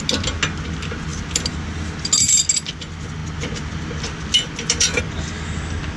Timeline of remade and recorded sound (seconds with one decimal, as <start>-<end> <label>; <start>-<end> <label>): 0.0-6.0 recorded